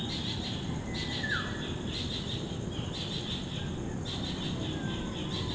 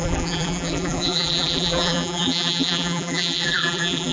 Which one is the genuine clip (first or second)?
first